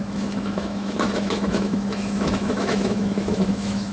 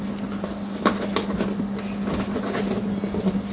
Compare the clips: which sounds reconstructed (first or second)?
first